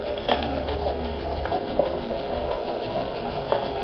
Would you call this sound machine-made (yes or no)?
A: yes